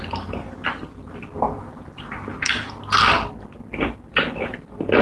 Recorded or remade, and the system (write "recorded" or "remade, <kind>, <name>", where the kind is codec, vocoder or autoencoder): recorded